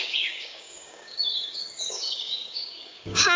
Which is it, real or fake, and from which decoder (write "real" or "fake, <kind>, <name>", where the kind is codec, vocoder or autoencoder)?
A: fake, codec, DAC